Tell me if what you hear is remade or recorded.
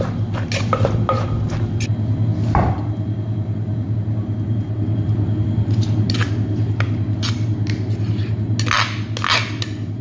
recorded